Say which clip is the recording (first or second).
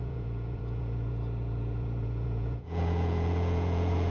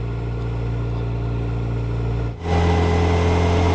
second